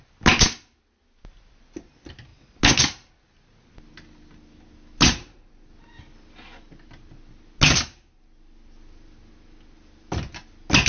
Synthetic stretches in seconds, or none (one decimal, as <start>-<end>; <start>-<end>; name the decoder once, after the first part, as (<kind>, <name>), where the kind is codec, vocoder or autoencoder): none